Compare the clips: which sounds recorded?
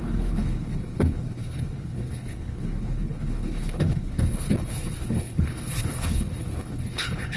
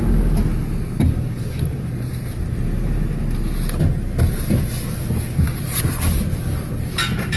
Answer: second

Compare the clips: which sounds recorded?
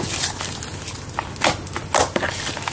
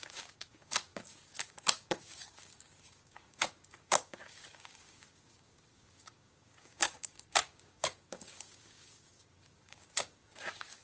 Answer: first